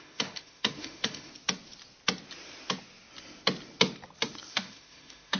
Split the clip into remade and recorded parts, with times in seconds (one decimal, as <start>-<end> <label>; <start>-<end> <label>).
0.0-1.3 remade; 1.3-4.5 recorded; 4.5-5.4 remade